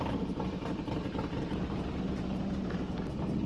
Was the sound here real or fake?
fake